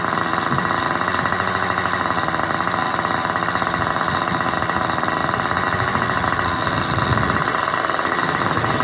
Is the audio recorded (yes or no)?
yes